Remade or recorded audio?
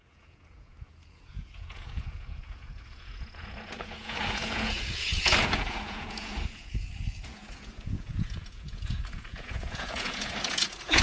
remade